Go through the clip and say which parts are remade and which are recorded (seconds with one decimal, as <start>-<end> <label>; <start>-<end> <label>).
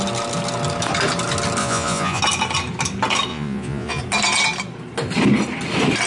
0.0-1.6 recorded; 1.6-2.2 remade; 2.2-3.3 recorded; 3.3-4.0 remade; 4.0-6.1 recorded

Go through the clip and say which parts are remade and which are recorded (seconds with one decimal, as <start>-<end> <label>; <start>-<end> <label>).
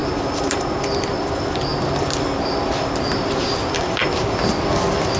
0.0-5.2 recorded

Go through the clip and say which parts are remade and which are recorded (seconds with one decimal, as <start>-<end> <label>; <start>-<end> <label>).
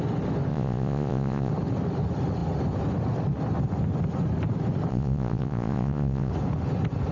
0.0-0.5 recorded; 0.5-1.5 remade; 1.5-4.9 recorded; 4.9-6.3 remade; 6.3-7.1 recorded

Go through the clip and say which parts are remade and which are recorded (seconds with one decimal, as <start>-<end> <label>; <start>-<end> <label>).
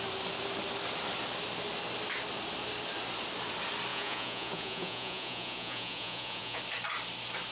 0.0-3.9 recorded; 3.9-6.6 remade; 6.6-7.5 recorded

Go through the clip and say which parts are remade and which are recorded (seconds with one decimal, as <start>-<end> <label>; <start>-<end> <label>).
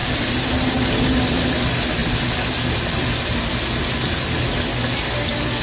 0.0-5.6 recorded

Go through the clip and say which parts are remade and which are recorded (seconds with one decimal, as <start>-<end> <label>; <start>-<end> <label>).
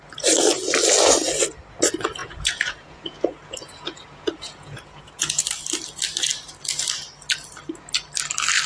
0.0-2.2 recorded; 2.2-5.4 remade; 5.4-8.7 recorded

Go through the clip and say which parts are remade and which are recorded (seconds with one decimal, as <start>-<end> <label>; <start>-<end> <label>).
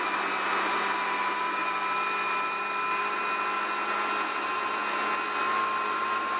0.0-6.4 recorded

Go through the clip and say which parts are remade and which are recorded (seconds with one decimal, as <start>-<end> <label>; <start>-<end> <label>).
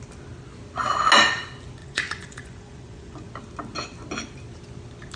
0.0-1.8 recorded; 1.8-3.3 remade; 3.3-5.2 recorded